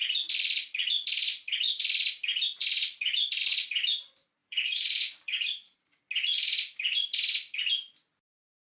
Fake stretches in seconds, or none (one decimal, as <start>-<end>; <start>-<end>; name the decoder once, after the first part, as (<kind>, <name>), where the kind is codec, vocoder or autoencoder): 4.4-6.0 (vocoder, BigVGAN v2)